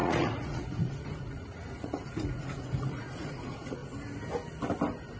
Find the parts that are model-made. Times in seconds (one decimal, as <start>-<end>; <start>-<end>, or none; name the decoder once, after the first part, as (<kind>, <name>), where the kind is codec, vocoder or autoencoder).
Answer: 0.0-3.8 (vocoder, Vocos)

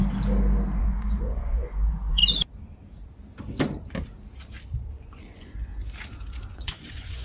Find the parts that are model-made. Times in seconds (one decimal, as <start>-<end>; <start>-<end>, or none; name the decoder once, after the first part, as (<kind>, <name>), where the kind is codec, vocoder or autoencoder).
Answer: 0.8-2.2 (vocoder, Vocos); 4.9-5.7; 6.5-7.2

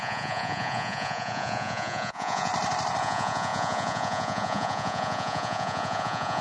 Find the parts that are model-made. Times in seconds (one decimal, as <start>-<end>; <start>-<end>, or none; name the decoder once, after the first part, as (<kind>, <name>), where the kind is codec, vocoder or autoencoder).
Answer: 0.0-2.5 (vocoder, Vocos); 3.0-6.4